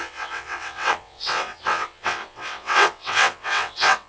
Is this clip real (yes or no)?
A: no